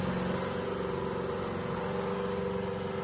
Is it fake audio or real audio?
real